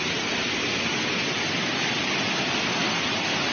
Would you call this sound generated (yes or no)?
no